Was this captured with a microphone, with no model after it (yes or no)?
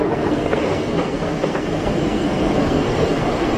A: no